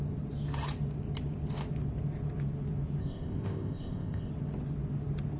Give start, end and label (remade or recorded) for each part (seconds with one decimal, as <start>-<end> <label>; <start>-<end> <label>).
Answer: 0.0-3.0 recorded; 3.0-4.3 remade; 4.3-5.4 recorded

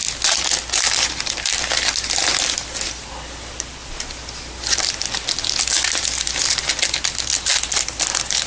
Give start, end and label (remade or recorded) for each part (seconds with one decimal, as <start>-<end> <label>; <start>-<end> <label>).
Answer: 0.0-8.5 recorded

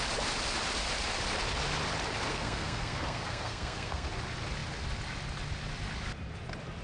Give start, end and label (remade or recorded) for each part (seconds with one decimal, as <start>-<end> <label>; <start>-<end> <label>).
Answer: 0.0-2.3 recorded; 2.3-4.1 remade; 4.1-6.8 recorded

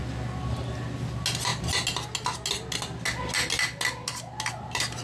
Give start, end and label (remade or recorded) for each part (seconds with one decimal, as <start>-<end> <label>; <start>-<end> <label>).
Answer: 0.0-5.0 recorded

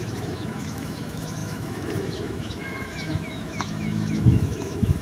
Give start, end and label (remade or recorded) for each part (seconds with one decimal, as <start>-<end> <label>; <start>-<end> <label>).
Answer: 0.0-5.0 remade